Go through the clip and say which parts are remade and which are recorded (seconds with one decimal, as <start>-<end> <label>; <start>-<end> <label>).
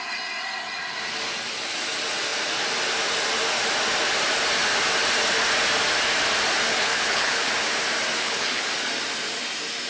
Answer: 0.0-6.7 recorded; 6.7-7.5 remade; 7.5-8.2 recorded; 8.2-8.7 remade; 8.7-9.9 recorded